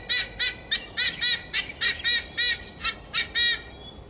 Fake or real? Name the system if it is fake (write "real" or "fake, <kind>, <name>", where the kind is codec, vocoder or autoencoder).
real